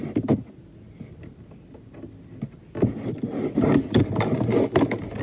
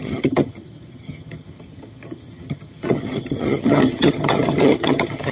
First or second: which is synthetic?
second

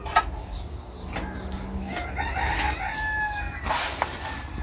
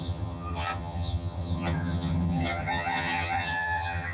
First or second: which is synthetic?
second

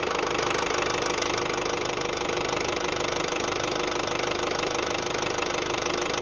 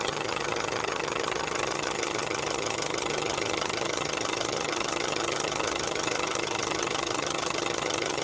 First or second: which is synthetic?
second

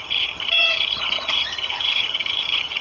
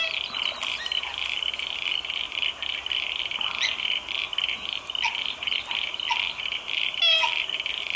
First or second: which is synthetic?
first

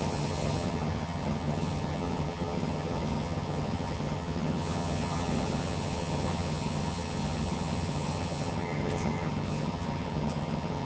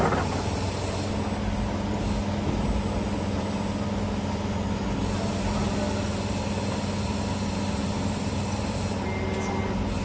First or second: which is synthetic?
first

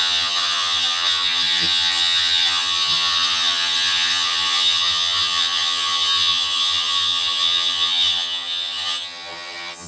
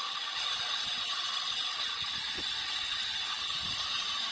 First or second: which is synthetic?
first